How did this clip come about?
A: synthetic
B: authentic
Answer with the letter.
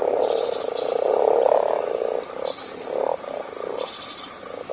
B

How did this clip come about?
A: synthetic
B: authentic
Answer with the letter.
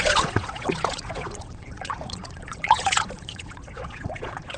A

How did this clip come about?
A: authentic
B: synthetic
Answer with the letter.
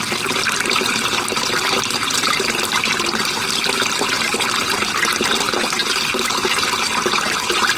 A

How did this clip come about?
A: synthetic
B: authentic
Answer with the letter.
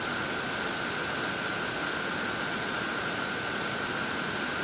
B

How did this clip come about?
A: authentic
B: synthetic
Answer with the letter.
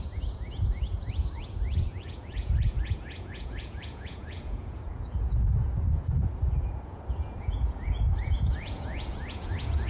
B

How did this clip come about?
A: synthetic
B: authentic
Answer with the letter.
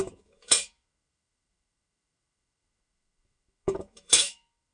A